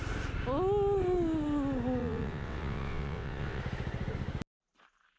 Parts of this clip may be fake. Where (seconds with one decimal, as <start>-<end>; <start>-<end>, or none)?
2.0-3.6